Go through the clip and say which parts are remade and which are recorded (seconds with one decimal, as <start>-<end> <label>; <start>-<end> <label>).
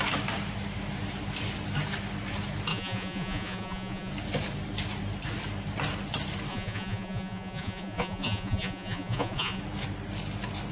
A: 0.0-2.7 recorded; 2.7-4.1 remade; 4.1-6.5 recorded; 6.5-9.6 remade; 9.6-10.7 recorded